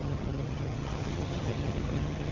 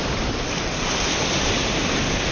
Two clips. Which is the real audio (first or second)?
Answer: second